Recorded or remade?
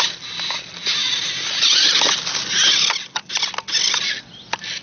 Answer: recorded